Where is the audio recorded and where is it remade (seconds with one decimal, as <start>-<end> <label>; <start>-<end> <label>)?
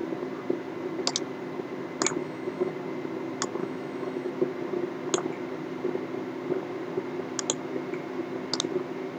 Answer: 0.0-2.2 recorded; 2.2-2.7 remade; 2.7-3.6 recorded; 3.6-4.3 remade; 4.3-9.2 recorded